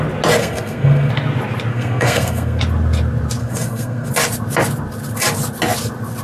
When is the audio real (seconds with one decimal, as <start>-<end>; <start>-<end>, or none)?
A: 0.0-0.4; 1.1-1.7; 2.6-3.4; 4.1-6.2